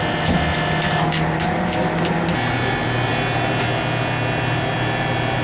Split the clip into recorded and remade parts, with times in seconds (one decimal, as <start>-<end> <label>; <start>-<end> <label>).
0.0-5.4 recorded